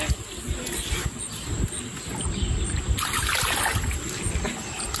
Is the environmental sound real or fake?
real